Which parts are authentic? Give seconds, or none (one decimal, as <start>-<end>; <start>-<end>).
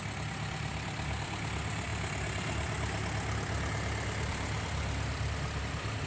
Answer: 0.0-6.1